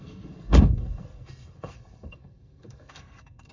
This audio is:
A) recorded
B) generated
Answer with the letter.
B